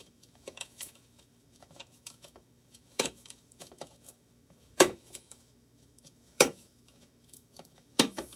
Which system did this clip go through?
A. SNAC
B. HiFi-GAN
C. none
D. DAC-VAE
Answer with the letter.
D